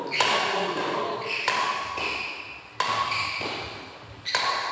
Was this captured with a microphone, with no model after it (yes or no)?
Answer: yes